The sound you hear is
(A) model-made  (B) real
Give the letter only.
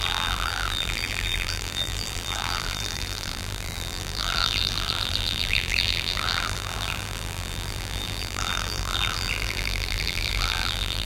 A